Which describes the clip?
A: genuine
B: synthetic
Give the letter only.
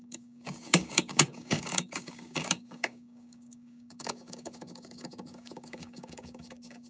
B